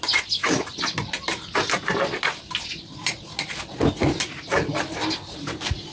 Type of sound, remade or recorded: recorded